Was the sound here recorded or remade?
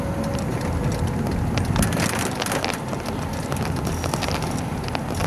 recorded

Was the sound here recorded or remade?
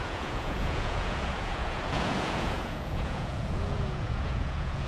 remade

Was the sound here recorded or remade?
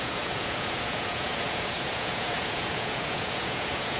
remade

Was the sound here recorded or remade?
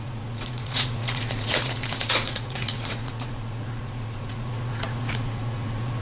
remade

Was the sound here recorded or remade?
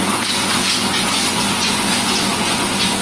remade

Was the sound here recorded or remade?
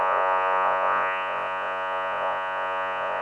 remade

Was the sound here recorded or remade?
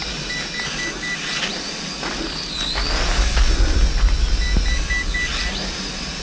recorded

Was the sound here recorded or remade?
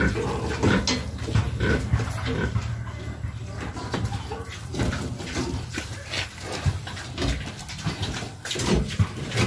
recorded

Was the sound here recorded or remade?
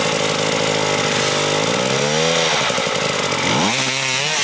recorded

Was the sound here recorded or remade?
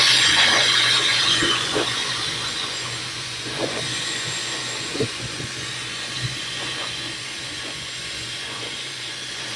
remade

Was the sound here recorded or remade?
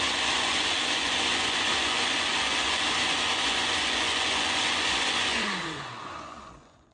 remade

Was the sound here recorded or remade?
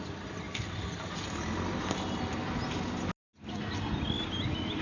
recorded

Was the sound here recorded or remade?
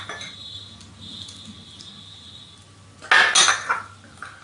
recorded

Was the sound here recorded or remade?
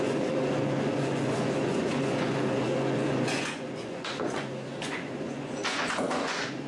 remade